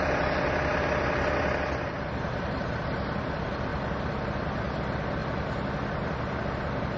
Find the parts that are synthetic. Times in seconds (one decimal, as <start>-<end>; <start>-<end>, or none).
0.0-3.7; 4.8-7.0